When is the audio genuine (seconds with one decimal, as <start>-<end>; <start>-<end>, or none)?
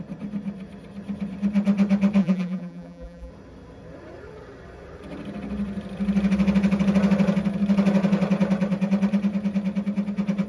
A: 0.0-2.2; 3.3-10.5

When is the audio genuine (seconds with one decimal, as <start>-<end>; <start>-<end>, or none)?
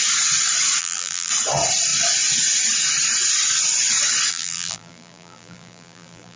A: 0.0-0.8; 1.3-4.3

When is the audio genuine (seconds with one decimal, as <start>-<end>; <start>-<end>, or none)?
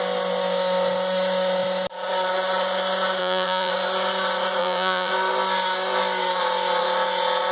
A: 0.0-3.2; 3.7-4.6; 5.1-7.5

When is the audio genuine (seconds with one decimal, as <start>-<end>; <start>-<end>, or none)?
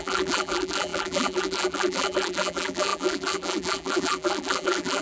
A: none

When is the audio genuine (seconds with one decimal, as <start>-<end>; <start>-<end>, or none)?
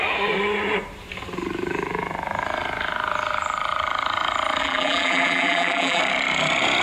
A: 0.0-4.6; 6.0-6.8